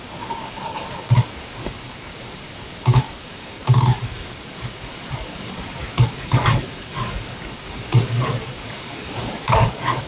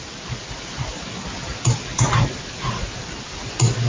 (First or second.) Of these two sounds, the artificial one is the first